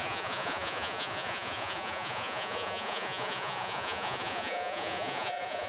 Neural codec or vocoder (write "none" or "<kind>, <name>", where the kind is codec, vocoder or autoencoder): vocoder, Vocos